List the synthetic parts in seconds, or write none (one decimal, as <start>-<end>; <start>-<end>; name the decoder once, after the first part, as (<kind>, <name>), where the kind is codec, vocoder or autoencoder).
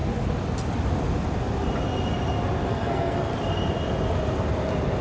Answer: 2.7-3.3 (codec, SNAC)